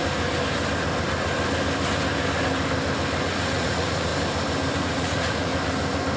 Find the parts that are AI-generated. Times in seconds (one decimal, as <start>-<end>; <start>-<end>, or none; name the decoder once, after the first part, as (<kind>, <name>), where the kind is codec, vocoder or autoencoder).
3.3-4.1 (vocoder, Vocos); 4.8-5.5

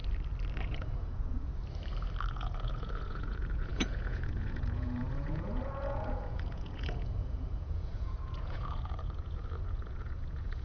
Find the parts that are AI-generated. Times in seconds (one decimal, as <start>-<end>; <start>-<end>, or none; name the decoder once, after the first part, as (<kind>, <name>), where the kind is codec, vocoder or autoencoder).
0.6-1.5 (vocoder, Vocos); 2.3-10.6

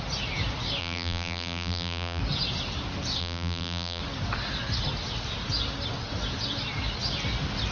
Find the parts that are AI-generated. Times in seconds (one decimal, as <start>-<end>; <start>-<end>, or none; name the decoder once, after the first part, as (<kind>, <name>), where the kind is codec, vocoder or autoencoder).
0.8-2.2 (vocoder, BigVGAN v2); 3.2-4.0

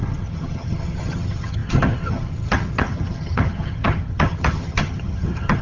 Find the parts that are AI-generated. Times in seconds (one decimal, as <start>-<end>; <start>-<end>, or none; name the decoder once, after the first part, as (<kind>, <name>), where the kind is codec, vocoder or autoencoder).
0.0-5.6 (vocoder, HiFi-GAN)

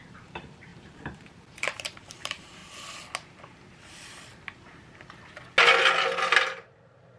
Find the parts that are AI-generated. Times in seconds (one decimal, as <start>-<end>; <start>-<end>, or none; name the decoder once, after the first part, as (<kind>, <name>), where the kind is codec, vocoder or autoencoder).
0.0-2.6 (vocoder, BigVGAN v2)

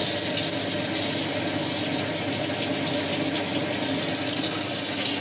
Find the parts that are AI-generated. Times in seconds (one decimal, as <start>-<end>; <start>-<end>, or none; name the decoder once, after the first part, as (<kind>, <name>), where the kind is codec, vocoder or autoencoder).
none